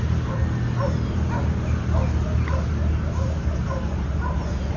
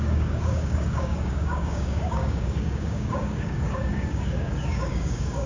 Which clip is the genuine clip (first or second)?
first